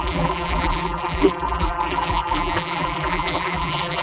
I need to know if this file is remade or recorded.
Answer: remade